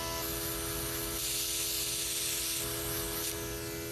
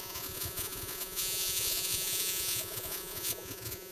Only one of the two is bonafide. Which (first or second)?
first